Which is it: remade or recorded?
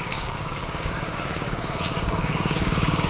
remade